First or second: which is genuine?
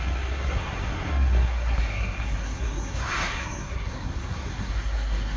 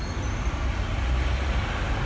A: second